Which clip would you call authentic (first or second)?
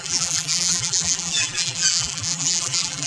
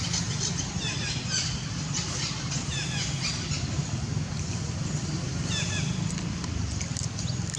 second